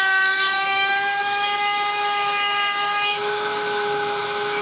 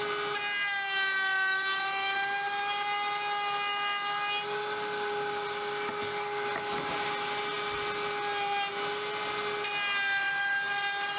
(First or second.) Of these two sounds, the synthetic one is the first